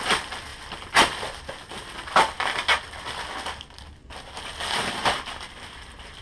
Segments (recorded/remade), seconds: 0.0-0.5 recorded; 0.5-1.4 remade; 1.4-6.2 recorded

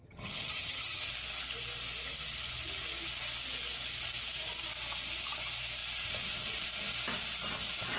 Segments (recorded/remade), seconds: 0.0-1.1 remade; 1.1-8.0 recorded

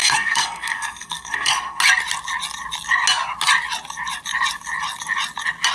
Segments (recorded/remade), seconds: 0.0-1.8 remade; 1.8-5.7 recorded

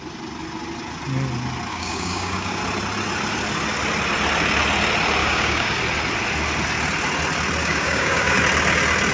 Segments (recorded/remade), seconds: 0.0-1.7 recorded; 1.7-2.6 remade; 2.6-5.2 recorded; 5.2-5.8 remade; 5.8-7.6 recorded; 7.6-8.4 remade; 8.4-9.1 recorded

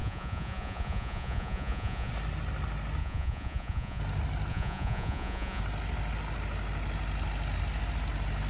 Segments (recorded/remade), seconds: 0.0-2.1 remade; 2.1-3.0 recorded; 3.0-4.0 remade; 4.0-4.5 recorded; 4.5-5.6 remade; 5.6-8.5 recorded

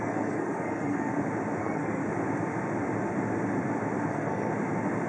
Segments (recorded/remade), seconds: 0.0-1.1 remade; 1.1-1.6 recorded; 1.6-2.0 remade; 2.0-4.1 recorded; 4.1-4.5 remade; 4.5-5.1 recorded

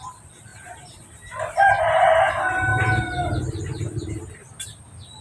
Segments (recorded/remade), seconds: 0.0-0.5 recorded; 0.5-2.3 remade; 2.3-5.2 recorded

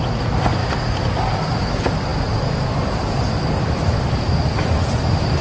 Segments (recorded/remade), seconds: 0.0-5.4 recorded